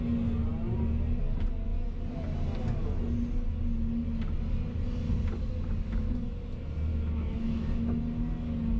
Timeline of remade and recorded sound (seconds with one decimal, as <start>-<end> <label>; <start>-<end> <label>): 0.0-6.9 recorded; 6.9-8.0 remade; 8.0-8.8 recorded